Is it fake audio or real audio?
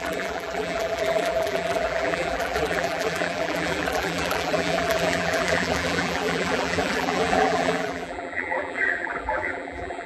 fake